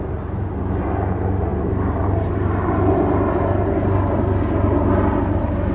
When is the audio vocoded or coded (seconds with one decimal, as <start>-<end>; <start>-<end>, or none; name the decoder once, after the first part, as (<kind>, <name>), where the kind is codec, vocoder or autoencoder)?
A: none